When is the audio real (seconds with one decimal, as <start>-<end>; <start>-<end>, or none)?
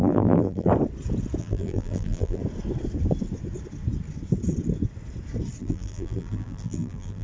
0.7-1.4; 2.4-5.6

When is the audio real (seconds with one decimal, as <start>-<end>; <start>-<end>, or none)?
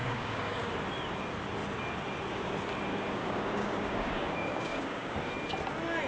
0.7-2.9; 5.3-6.1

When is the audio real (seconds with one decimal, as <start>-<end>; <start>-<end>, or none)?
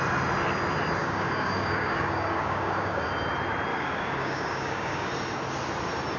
0.0-1.0; 3.1-3.7; 5.1-6.2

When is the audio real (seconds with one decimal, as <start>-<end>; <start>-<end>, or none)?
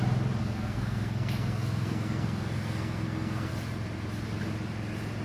0.0-0.4; 3.5-5.2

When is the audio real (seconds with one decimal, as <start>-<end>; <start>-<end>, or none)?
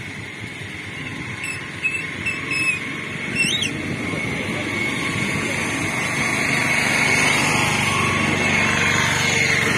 0.0-9.8